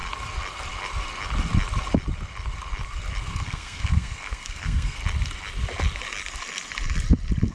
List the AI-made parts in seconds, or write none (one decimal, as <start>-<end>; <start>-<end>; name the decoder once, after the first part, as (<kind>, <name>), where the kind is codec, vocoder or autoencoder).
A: 3.2-5.0 (codec, SNAC)